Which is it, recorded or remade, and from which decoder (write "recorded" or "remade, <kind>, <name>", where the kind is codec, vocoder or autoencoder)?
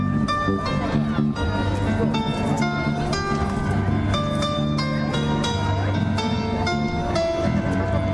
recorded